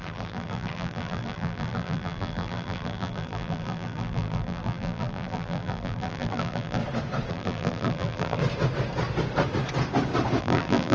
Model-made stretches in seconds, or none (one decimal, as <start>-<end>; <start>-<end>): 0.0-6.8; 7.3-8.4; 10.4-10.9